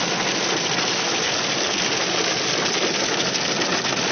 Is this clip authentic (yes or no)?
yes